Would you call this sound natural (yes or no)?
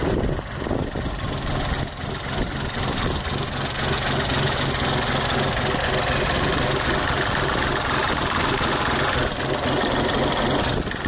yes